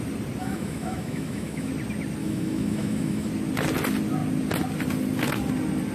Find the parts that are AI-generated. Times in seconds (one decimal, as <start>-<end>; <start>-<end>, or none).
0.4-1.7; 2.2-3.3